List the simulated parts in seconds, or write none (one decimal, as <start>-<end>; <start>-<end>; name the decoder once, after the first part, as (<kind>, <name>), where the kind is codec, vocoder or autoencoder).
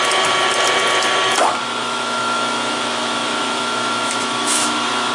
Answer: 1.8-5.1 (autoencoder, DAC-VAE)